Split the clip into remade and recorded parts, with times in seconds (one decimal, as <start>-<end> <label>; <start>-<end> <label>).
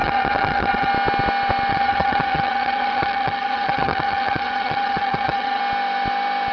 0.0-0.9 remade; 0.9-1.7 recorded; 1.7-5.6 remade; 5.6-6.5 recorded